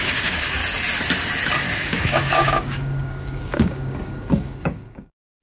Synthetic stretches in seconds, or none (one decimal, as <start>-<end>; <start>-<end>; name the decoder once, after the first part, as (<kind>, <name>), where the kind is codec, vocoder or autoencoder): 0.0-0.6 (codec, DAC); 1.8-5.4